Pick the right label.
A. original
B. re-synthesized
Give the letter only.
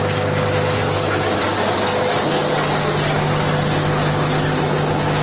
A